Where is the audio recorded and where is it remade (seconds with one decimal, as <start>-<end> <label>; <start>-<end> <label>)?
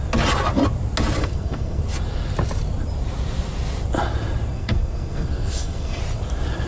0.0-1.2 recorded; 1.2-1.8 remade; 1.8-4.5 recorded; 4.5-6.0 remade; 6.0-6.7 recorded